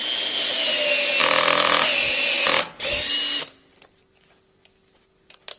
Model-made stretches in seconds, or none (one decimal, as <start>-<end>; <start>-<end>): none